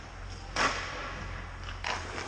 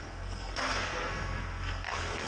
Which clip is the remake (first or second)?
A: second